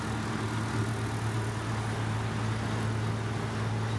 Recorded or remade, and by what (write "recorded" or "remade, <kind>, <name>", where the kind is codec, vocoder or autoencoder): recorded